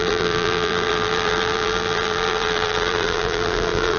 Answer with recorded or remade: remade